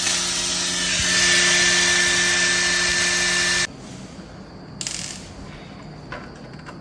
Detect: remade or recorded recorded